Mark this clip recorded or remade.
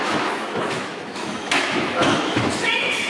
remade